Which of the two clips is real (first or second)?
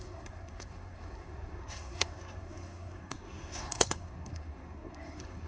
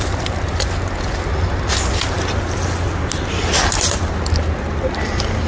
second